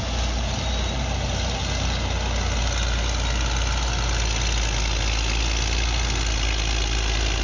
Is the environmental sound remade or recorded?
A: recorded